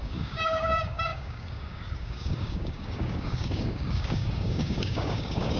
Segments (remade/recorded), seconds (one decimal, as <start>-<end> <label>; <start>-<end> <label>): 0.0-5.6 remade